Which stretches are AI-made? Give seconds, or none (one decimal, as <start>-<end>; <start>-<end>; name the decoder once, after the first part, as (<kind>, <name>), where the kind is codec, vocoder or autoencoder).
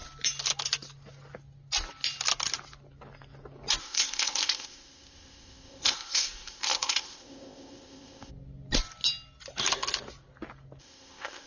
3.8-8.3 (codec, ZipCodec); 10.8-11.5